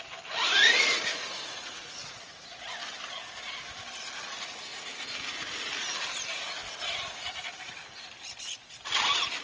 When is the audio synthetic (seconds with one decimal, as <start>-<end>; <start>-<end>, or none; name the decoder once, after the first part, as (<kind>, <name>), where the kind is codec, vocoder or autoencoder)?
1.1-2.5 (vocoder, Vocos)